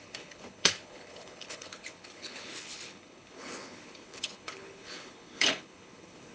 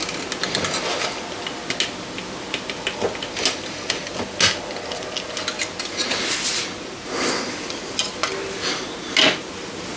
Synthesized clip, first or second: first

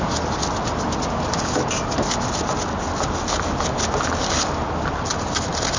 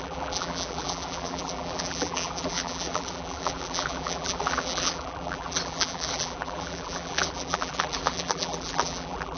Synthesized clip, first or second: second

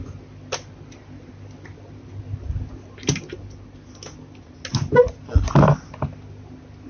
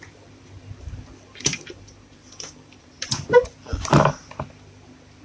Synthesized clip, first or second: second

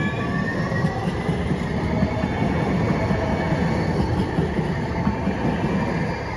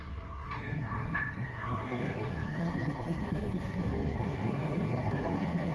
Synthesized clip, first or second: second